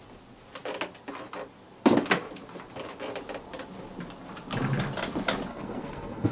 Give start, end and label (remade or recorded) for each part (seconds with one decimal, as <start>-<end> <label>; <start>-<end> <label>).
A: 0.0-5.5 recorded; 5.5-6.3 remade